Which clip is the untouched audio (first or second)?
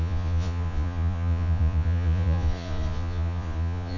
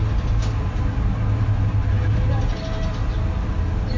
second